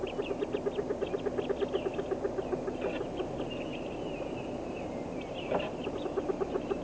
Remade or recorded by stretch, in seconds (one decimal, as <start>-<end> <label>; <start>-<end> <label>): 0.0-3.7 recorded; 3.7-4.5 remade; 4.5-6.8 recorded